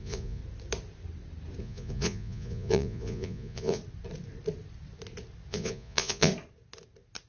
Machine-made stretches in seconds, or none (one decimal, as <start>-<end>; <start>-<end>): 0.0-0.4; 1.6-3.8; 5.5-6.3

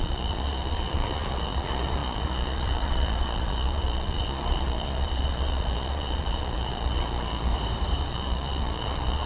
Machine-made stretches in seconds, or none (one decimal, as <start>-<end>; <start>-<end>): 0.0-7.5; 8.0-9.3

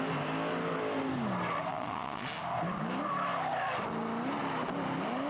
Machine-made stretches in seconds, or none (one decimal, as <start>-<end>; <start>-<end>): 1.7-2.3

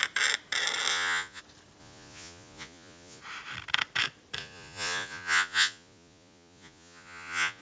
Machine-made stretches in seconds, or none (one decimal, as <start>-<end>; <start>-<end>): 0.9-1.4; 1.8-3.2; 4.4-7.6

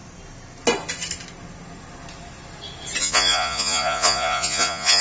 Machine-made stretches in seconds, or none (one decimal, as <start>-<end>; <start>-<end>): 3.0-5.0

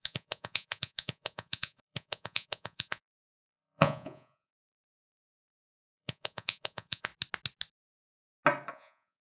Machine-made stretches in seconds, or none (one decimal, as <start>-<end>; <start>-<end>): 0.0-7.1; 8.7-9.2

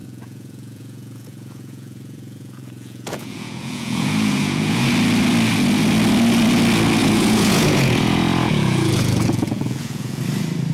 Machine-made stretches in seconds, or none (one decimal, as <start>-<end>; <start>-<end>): 0.0-4.9; 7.0-10.2